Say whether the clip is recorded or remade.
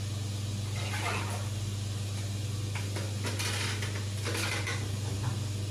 recorded